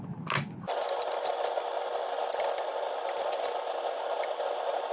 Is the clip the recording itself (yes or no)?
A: yes